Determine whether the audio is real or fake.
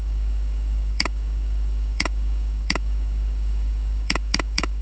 fake